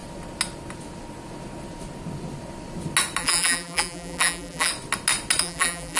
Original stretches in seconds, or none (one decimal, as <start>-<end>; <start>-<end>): 0.0-3.2; 4.7-5.4